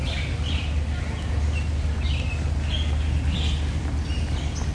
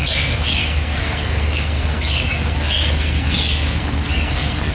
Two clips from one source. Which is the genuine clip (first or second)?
first